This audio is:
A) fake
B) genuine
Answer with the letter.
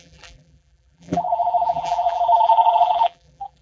A